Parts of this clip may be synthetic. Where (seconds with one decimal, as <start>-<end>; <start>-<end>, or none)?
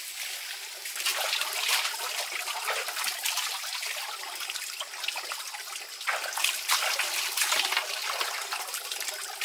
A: none